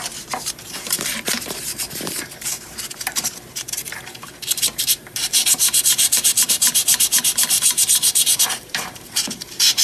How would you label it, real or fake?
fake